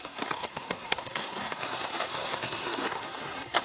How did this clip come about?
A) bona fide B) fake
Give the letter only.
B